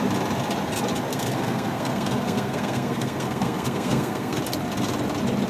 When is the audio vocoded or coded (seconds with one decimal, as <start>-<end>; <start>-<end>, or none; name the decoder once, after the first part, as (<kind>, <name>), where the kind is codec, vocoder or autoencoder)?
1.1-4.4 (codec, SNAC)